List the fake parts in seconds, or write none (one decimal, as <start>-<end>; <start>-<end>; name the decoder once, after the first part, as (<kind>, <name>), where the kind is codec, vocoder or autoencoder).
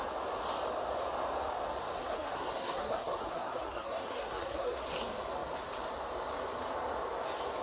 2.0-4.9 (codec, SNAC)